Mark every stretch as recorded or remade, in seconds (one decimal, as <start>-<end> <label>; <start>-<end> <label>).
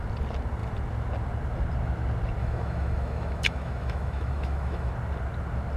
0.0-2.4 recorded; 2.4-4.9 remade; 4.9-5.8 recorded